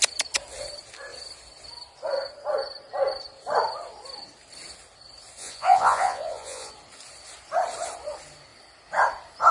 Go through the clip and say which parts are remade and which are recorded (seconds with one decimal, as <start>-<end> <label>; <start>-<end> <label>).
0.0-5.4 recorded; 5.4-6.7 remade; 6.7-9.5 recorded